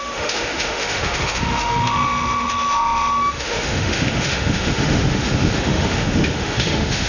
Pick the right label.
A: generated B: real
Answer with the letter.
A